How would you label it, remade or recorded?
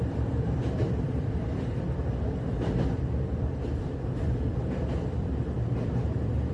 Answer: remade